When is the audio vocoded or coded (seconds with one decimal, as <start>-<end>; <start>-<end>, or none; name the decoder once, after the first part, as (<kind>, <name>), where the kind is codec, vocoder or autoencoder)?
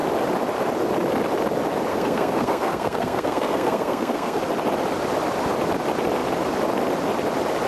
1.9-4.4 (codec, SNAC)